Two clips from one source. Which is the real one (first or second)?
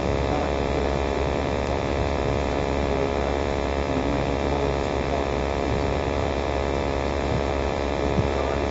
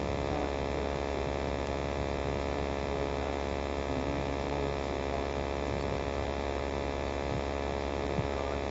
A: second